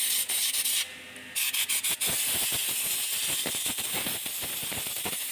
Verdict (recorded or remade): recorded